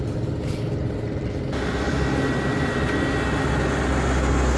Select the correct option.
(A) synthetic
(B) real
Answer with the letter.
B